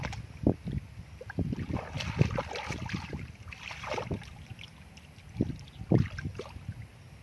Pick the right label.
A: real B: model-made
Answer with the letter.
A